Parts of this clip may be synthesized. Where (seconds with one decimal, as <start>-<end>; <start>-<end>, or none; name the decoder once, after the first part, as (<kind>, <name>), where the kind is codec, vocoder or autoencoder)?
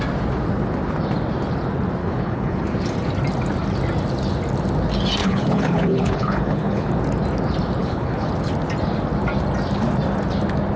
2.0-2.6 (codec, HILCodec); 5.2-6.9; 7.8-8.3